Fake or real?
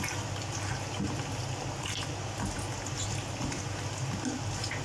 real